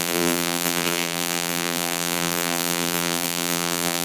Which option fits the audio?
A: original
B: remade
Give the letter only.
B